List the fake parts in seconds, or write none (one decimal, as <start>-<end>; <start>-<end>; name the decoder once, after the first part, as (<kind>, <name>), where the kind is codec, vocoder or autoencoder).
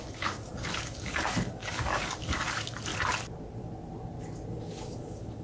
0.0-2.9 (codec, DAC); 4.5-5.4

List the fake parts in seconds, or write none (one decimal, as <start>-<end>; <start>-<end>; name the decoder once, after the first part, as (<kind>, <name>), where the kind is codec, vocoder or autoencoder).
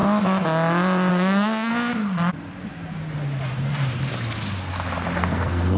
1.1-1.7 (codec, SNAC); 5.2-5.8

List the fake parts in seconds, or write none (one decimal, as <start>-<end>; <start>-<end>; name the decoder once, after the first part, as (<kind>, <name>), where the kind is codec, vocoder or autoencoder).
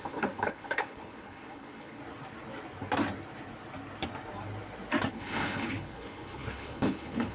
0.0-2.0 (codec, HILCodec); 5.1-7.3